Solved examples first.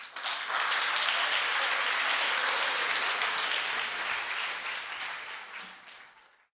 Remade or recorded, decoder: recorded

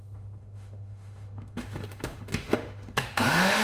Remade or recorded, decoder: remade, autoencoder, DAC-VAE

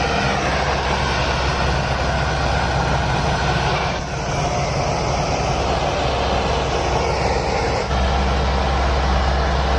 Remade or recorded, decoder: recorded